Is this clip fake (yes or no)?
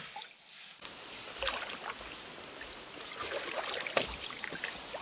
no